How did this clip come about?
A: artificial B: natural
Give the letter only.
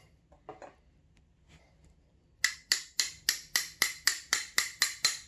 B